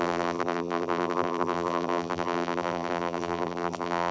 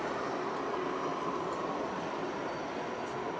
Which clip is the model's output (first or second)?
first